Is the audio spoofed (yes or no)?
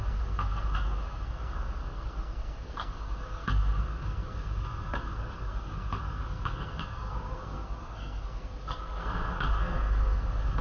yes